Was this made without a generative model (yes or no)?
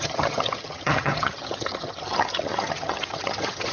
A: no